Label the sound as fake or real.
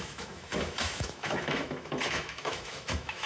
fake